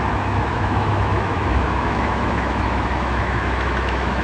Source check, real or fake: fake